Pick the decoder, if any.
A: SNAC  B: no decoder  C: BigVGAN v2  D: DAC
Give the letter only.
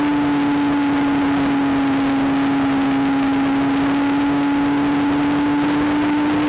B